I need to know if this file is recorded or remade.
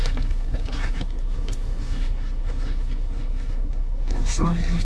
remade